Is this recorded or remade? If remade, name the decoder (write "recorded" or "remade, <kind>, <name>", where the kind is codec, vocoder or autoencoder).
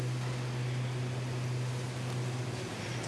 recorded